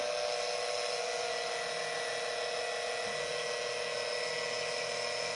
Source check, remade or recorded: recorded